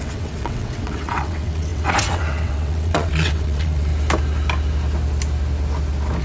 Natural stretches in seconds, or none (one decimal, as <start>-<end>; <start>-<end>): 3.9-6.2